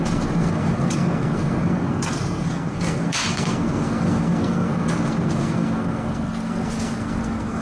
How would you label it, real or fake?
fake